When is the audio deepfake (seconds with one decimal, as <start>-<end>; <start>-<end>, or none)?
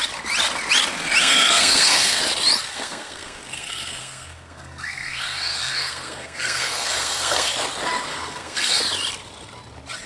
1.2-2.2; 2.7-7.5; 8.1-8.8